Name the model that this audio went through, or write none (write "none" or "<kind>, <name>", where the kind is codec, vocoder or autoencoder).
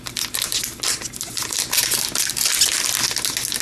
none